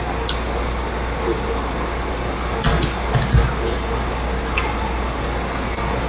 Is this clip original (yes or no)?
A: yes